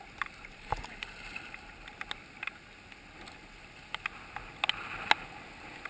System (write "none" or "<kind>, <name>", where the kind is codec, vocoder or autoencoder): none